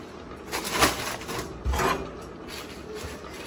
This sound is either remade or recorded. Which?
recorded